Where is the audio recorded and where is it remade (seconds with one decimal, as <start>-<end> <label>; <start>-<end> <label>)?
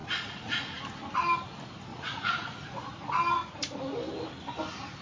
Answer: 0.0-0.8 remade; 0.8-1.9 recorded; 1.9-2.9 remade; 2.9-5.0 recorded